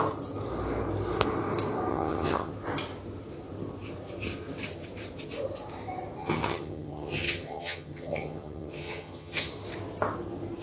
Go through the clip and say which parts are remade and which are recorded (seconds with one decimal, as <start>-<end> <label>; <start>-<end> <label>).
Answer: 0.0-1.9 recorded; 1.9-2.5 remade; 2.5-6.2 recorded; 6.2-9.5 remade; 9.5-10.6 recorded